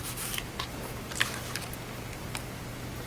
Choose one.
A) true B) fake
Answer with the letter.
A